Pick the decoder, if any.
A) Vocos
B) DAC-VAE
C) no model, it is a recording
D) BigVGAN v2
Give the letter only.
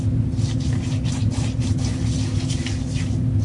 C